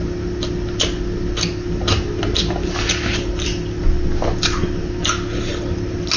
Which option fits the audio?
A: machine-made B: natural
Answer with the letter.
B